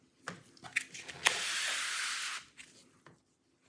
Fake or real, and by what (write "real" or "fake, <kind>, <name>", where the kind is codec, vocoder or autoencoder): real